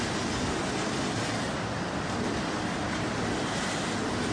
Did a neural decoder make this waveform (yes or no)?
no